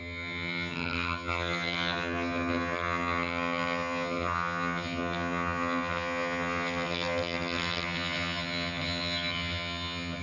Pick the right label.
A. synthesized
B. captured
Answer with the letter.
A